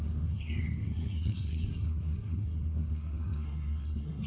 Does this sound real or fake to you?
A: fake